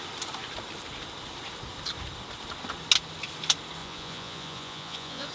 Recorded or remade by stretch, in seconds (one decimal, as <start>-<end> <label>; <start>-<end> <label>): 0.0-3.8 recorded; 3.8-5.3 remade